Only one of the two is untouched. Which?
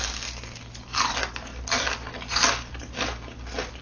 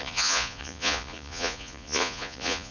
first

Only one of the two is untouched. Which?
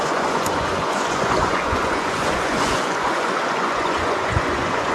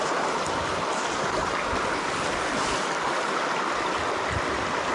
second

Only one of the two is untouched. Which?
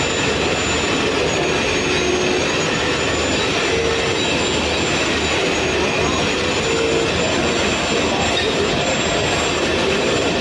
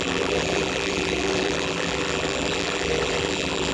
first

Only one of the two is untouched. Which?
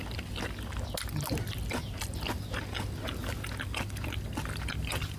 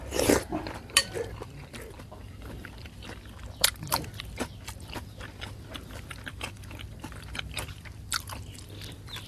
first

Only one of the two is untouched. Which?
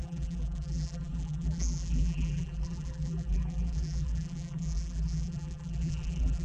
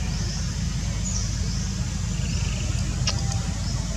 second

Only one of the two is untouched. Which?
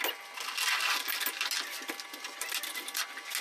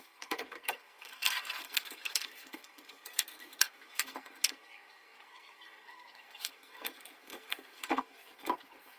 first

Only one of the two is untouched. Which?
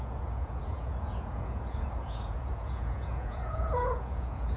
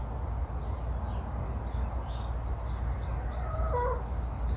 second